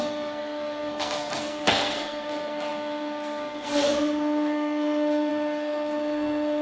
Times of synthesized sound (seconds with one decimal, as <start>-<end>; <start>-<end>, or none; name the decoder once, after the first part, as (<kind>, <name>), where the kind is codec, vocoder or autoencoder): 0.0-6.6 (codec, SNAC)